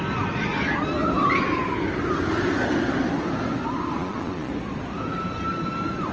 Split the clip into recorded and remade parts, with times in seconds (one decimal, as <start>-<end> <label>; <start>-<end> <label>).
0.0-4.0 recorded; 4.0-4.5 remade; 4.5-6.1 recorded